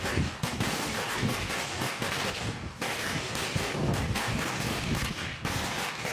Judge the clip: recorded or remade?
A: remade